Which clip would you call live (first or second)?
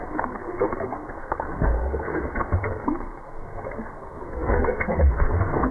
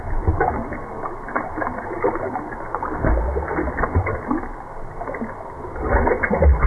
second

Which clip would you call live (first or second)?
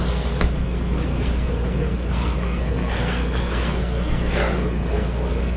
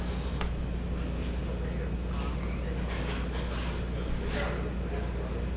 second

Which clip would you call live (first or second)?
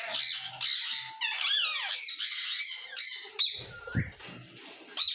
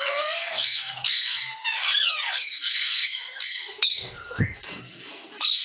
first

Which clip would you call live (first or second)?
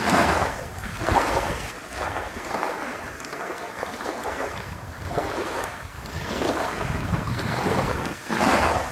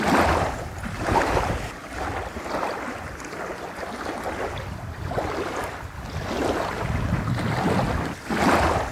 second